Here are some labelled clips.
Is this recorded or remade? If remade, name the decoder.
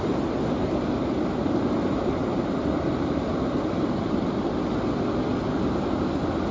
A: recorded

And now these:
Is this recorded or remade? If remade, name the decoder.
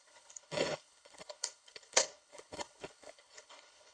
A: remade, codec, HILCodec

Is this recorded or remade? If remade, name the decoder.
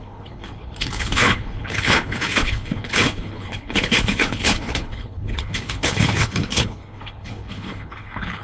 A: remade, codec, HILCodec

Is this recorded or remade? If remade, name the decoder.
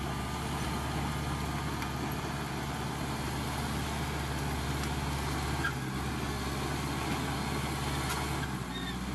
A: recorded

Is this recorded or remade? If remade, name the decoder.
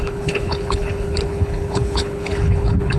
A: remade, codec, HILCodec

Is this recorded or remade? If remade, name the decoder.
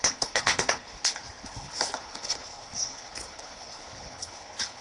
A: remade, codec, HILCodec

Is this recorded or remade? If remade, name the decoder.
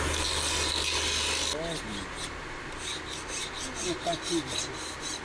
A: recorded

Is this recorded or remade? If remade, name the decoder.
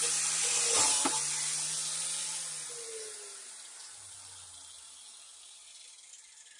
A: recorded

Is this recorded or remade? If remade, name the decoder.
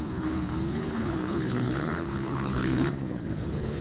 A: remade, codec, HILCodec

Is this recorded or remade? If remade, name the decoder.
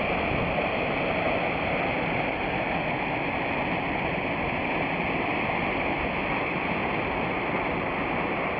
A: recorded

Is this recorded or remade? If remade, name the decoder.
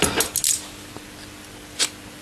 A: recorded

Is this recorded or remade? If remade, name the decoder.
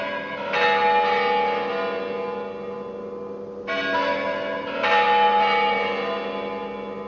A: recorded